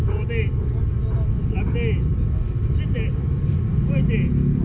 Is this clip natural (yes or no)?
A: yes